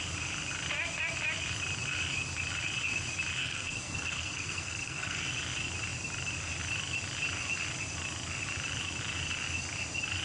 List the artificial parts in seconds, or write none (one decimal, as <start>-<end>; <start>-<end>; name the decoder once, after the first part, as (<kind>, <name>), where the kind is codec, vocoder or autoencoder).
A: 3.4-5.3 (codec, SNAC)